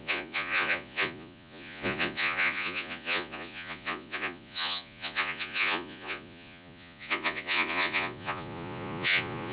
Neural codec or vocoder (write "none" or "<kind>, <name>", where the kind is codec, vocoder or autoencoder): vocoder, Vocos